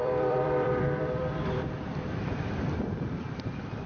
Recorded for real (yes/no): no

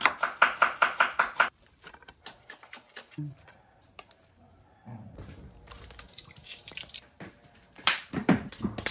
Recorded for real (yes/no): no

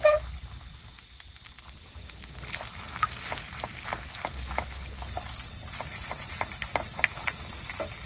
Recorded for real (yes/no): yes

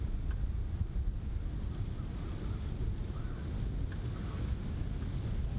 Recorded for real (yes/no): yes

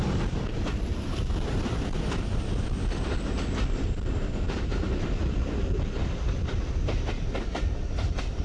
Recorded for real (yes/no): no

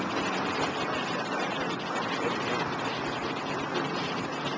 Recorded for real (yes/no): yes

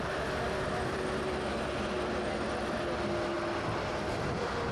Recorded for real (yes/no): yes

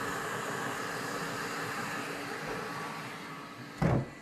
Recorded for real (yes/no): yes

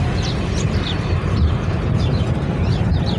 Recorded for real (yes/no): no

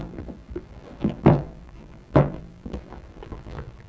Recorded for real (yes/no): no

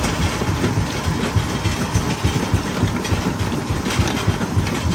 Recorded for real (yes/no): yes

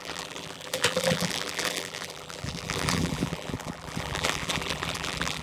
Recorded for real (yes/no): no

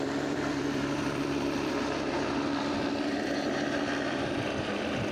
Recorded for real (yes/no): no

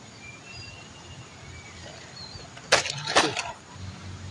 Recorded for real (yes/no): yes